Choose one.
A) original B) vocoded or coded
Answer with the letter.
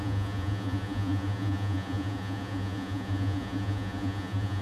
B